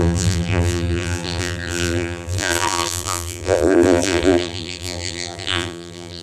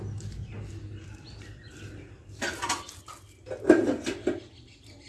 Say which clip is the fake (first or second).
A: first